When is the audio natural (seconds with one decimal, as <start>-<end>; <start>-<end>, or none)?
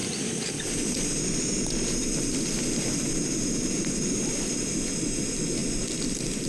0.0-6.5